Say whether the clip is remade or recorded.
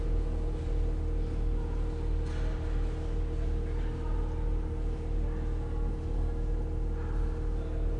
recorded